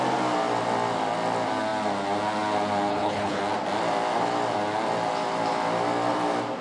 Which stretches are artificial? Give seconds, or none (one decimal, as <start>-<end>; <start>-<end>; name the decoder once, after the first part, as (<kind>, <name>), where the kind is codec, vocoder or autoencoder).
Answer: 2.9-3.4 (codec, HILCodec)

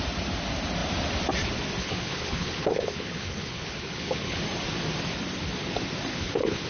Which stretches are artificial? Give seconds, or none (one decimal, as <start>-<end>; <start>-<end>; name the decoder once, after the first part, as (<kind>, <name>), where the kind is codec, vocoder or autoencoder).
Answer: 1.8-4.4 (codec, HILCodec); 6.1-6.7

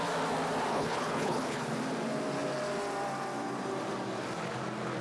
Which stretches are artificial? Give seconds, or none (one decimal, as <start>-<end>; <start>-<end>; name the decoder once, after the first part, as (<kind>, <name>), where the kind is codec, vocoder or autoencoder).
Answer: 0.7-1.7 (codec, HILCodec)

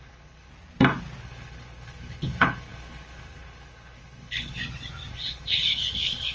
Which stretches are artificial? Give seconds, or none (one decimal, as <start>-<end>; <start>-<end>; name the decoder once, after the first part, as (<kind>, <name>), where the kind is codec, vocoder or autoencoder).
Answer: 0.0-0.5 (codec, HILCodec); 1.2-4.6; 5.1-6.3

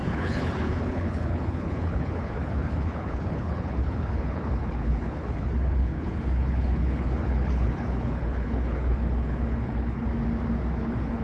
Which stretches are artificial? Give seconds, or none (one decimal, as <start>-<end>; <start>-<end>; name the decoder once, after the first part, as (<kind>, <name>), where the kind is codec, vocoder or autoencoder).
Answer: 0.0-10.1 (codec, HILCodec); 10.7-11.2

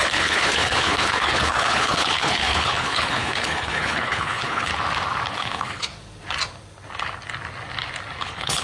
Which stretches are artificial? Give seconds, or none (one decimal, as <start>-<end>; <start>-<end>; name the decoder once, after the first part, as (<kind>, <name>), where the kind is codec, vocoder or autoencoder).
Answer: 0.0-4.7 (codec, HILCodec); 5.3-5.9; 8.2-8.6

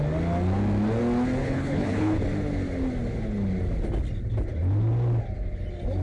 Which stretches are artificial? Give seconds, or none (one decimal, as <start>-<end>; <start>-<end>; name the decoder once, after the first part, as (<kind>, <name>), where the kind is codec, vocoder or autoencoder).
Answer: 1.4-2.2 (codec, HILCodec)

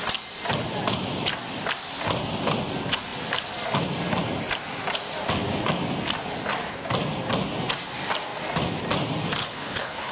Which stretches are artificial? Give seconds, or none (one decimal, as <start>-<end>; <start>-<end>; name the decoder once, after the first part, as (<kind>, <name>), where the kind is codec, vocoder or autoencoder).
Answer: 9.4-10.1 (codec, HILCodec)